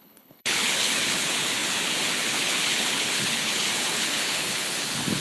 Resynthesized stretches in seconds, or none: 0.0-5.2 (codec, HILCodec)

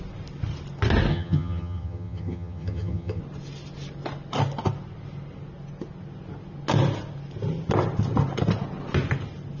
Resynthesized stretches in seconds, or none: 1.1-3.2 (vocoder, HiFi-GAN)

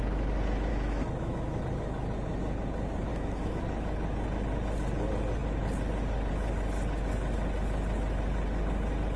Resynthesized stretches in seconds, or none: 0.7-1.6 (autoencoder, DAC-VAE); 3.1-3.6

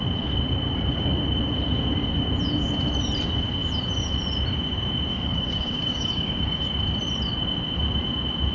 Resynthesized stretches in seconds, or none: 5.1-6.6 (codec, DAC)

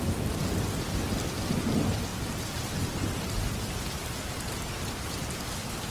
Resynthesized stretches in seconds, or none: none

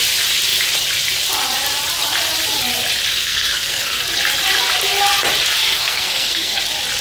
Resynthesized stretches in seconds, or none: 3.1-4.0 (codec, SNAC); 5.6-6.6